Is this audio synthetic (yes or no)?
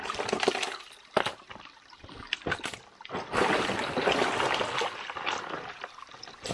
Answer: no